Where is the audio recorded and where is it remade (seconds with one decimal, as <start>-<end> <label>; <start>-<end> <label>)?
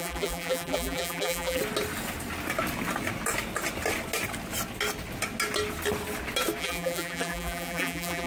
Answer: 0.0-1.6 remade; 1.6-6.6 recorded; 6.6-8.3 remade